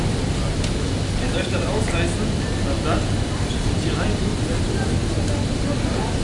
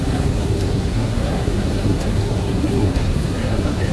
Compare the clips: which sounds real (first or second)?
first